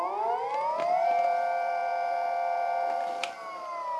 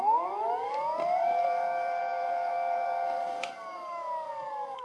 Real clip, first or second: first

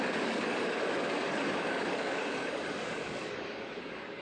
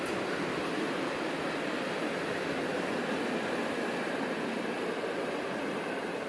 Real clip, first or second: second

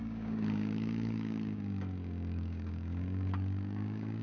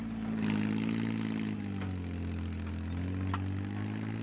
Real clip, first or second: second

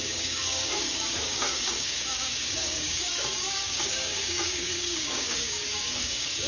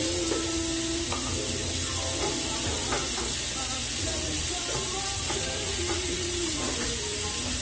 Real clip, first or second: second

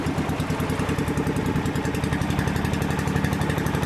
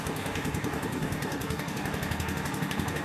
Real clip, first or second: first